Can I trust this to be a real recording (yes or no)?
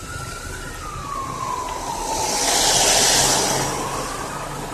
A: yes